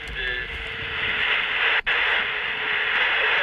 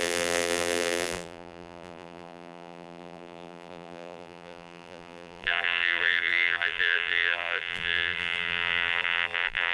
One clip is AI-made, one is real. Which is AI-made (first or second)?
second